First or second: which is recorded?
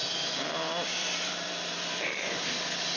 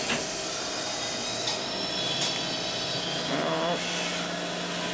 second